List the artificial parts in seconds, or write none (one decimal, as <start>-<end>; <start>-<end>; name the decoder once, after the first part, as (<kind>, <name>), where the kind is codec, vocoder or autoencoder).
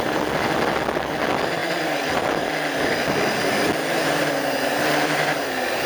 none